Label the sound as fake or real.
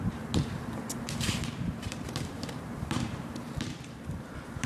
fake